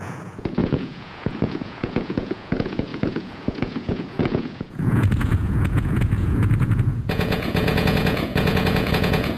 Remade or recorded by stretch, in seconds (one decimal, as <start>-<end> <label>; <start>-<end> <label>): 0.0-9.4 remade